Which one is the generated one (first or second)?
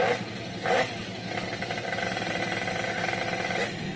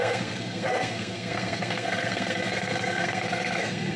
second